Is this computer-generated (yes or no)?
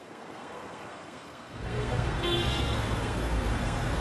yes